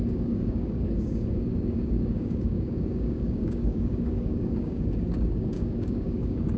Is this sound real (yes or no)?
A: no